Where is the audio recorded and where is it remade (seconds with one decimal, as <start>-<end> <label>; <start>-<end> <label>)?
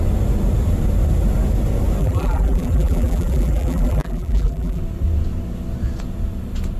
0.0-2.0 recorded; 2.0-4.8 remade; 4.8-6.8 recorded